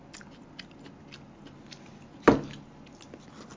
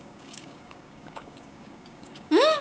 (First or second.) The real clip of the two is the first